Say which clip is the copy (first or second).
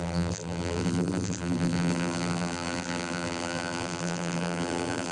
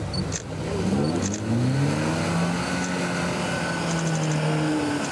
first